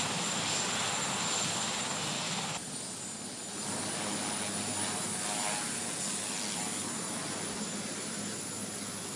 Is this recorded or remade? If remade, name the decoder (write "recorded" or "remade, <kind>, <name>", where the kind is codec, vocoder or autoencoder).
recorded